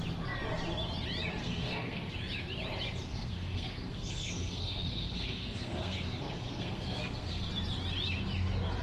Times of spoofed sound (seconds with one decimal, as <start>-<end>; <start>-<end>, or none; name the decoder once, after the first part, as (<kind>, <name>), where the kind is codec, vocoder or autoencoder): 1.4-2.1 (codec, SNAC); 3.1-7.5